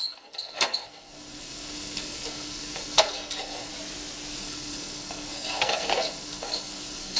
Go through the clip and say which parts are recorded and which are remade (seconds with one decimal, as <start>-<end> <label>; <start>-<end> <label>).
0.0-3.7 remade; 3.7-4.4 recorded; 4.4-7.2 remade